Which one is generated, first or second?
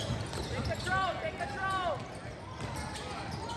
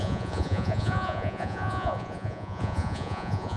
second